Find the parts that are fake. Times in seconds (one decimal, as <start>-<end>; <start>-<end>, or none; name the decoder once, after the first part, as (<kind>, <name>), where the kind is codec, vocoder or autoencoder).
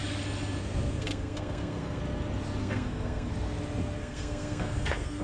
0.6-2.0 (codec, SNAC); 2.6-3.3; 4.0-5.2